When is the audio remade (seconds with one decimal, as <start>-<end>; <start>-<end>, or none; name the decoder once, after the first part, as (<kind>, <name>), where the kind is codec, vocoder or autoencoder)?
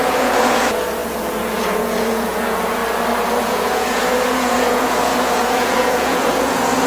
0.0-2.8 (vocoder, Vocos); 3.4-6.9